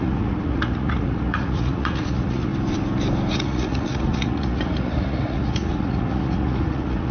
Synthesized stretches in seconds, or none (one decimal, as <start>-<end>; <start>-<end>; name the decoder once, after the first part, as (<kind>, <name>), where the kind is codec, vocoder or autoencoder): 0.0-2.5 (vocoder, Vocos); 3.3-7.1